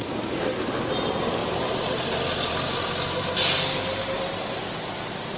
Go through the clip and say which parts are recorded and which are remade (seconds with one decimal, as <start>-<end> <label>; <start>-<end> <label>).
0.0-5.4 recorded